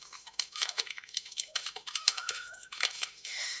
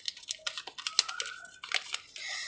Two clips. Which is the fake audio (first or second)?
first